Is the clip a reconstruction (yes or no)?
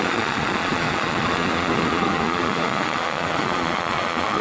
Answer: yes